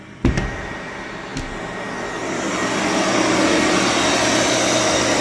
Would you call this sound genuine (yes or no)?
yes